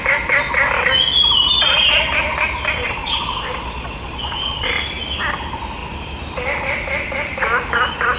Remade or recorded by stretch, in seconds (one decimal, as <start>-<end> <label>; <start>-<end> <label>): 0.0-2.8 recorded; 2.8-4.7 remade; 4.7-8.2 recorded